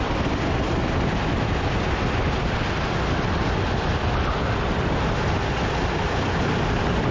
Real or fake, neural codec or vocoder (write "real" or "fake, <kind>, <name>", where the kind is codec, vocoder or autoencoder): real